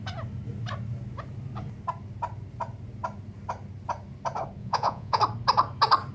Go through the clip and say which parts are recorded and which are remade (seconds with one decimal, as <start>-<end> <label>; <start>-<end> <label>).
0.0-4.6 recorded; 4.6-5.2 remade; 5.2-6.1 recorded